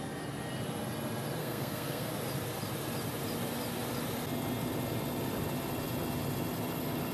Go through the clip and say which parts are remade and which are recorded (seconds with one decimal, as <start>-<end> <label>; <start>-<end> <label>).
0.0-1.4 recorded; 1.4-2.1 remade; 2.1-7.1 recorded